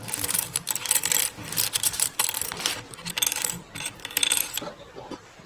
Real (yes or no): no